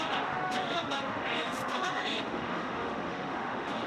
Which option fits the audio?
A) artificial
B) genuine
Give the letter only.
A